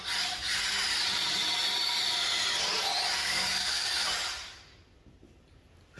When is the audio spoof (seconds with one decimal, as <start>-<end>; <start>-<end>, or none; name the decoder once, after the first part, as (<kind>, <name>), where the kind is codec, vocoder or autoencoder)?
3.2-3.9 (codec, DAC)